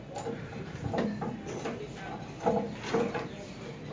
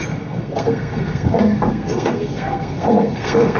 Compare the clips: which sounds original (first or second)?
first